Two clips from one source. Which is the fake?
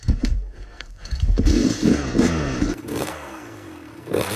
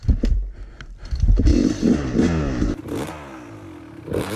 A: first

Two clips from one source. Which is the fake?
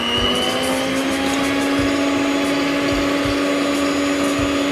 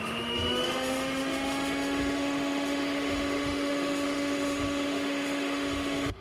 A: second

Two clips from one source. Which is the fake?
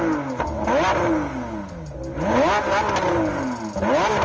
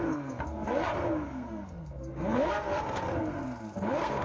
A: second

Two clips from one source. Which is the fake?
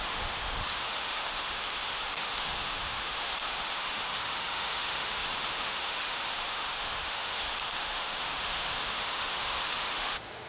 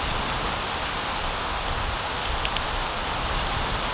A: first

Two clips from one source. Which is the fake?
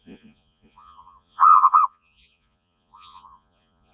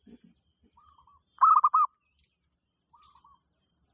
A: first